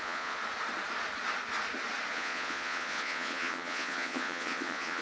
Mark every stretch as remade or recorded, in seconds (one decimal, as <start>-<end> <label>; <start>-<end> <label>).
0.0-0.4 remade; 0.4-2.1 recorded; 2.1-5.0 remade